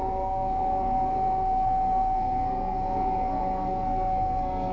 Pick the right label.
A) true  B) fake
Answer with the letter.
B